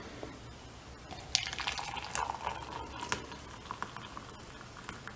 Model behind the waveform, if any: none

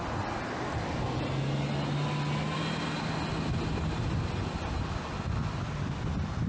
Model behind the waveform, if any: none